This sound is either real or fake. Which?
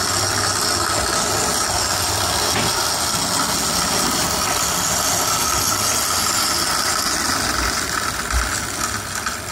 real